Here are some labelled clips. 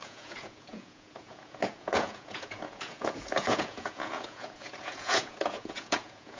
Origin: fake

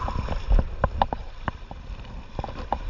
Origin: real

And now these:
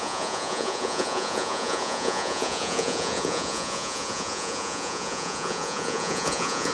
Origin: fake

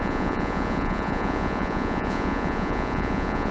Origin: fake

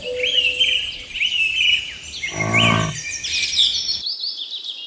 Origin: real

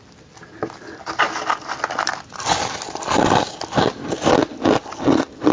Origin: real